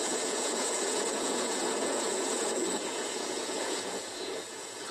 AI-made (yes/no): yes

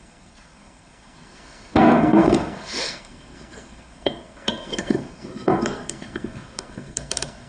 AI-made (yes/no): yes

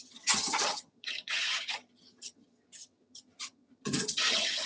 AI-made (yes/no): yes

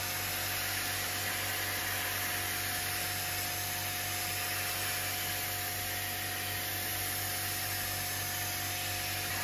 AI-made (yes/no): no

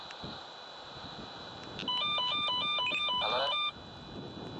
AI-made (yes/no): no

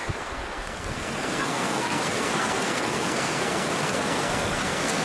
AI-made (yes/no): yes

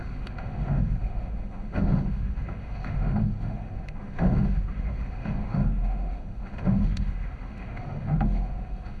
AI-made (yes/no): yes